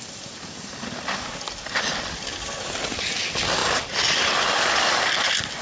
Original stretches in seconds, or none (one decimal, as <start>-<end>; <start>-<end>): 0.0-5.6

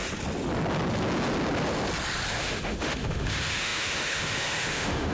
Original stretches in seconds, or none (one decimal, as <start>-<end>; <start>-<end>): 0.0-2.3

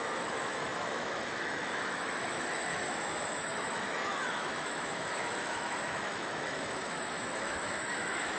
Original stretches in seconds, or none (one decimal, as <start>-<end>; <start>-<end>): none

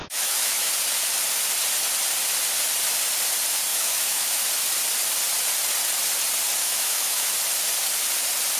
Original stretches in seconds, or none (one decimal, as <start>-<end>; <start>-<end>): 0.7-3.7; 4.4-6.6; 7.3-8.6

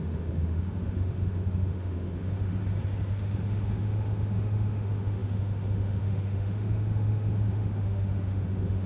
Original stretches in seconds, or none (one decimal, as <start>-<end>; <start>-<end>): 2.6-3.1

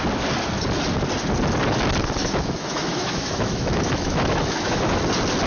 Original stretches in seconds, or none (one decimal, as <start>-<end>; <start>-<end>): 0.0-2.2; 5.0-5.5

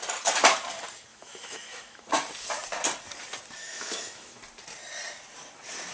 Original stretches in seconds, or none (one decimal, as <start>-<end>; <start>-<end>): 0.0-1.1; 2.1-3.6; 4.4-5.9